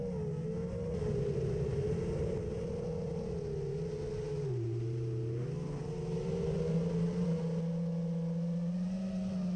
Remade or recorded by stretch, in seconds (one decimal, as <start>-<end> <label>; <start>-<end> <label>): 0.0-9.6 recorded